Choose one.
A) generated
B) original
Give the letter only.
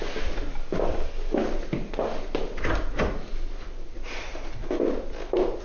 B